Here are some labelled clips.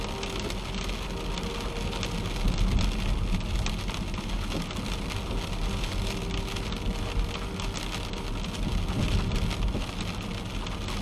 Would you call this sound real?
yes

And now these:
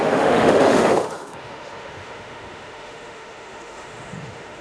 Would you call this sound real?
no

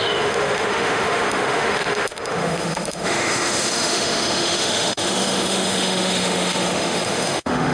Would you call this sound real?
no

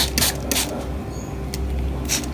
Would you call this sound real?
yes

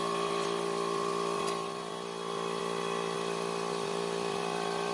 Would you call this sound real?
yes